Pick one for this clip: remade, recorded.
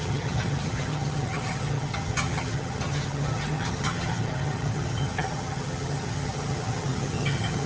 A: remade